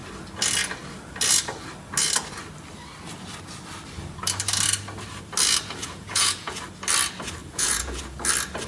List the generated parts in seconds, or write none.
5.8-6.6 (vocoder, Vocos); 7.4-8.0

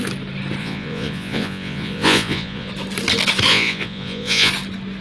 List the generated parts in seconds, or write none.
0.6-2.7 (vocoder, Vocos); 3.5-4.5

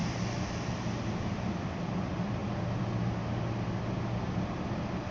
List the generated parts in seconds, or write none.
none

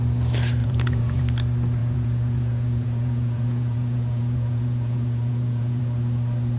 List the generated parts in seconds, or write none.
0.6-1.2 (vocoder, Vocos); 1.8-5.8

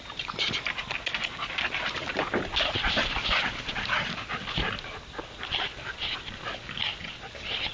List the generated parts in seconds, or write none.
none

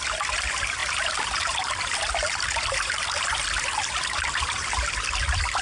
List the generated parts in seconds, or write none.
none